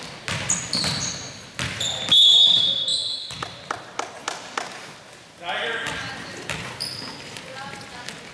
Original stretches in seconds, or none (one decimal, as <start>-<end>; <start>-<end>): 0.0-8.3